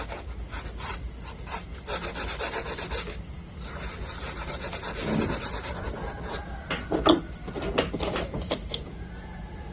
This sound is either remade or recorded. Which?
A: recorded